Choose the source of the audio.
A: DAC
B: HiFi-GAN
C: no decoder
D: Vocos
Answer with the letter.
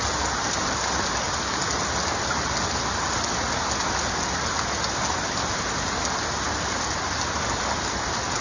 C